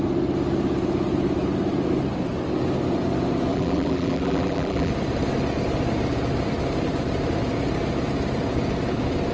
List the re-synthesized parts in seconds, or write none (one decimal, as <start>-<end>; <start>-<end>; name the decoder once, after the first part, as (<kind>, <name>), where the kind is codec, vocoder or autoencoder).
3.5-4.9 (vocoder, BigVGAN v2)